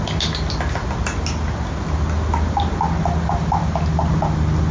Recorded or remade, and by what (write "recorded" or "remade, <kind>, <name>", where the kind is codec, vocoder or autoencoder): recorded